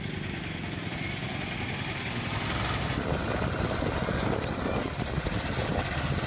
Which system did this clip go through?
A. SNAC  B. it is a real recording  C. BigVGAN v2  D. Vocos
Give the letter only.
B